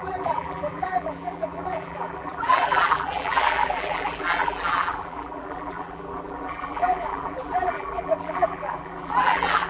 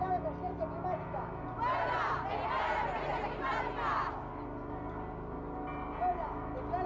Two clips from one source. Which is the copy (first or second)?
first